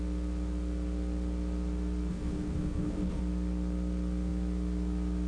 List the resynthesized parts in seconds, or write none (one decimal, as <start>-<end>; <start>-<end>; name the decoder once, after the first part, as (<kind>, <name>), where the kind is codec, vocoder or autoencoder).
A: 2.1-3.2 (codec, SNAC)